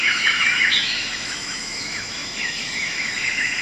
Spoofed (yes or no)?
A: yes